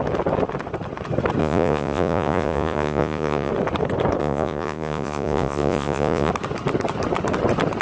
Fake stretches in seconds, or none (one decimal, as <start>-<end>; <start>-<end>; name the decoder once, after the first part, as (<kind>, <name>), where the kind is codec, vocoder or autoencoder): 1.4-3.5 (vocoder, Vocos); 4.2-6.3